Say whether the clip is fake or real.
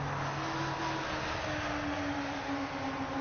real